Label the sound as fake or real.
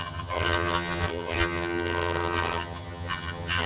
fake